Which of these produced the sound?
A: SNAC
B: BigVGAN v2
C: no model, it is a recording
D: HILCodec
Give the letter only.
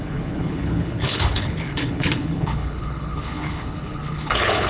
D